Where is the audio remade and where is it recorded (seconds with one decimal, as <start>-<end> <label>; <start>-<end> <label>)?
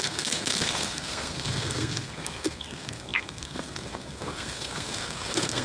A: 0.0-5.6 remade